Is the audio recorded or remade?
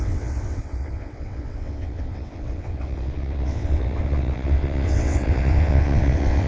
remade